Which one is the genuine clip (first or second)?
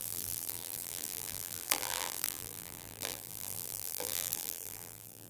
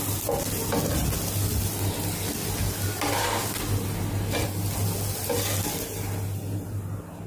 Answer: second